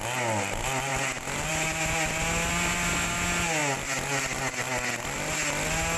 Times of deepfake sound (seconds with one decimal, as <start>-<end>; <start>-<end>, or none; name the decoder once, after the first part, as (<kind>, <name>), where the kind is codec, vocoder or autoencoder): none